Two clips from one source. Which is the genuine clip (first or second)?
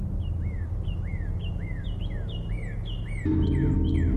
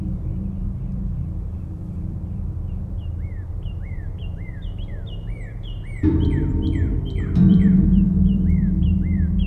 first